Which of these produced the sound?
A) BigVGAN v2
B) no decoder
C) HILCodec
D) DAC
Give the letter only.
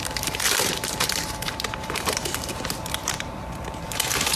A